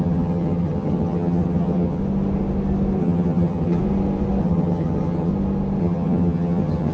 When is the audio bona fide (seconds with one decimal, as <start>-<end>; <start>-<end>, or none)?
2.0-3.0; 3.8-4.4; 5.3-5.8